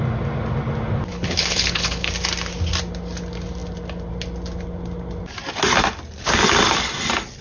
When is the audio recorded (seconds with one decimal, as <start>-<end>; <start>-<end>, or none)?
0.0-1.1; 2.1-7.4